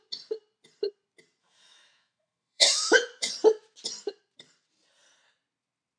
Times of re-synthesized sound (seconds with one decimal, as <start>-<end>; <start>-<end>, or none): 1.4-3.3